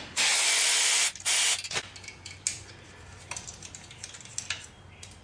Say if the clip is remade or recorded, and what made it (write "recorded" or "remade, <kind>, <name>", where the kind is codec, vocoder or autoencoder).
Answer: recorded